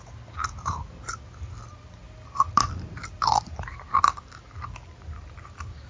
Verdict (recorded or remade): recorded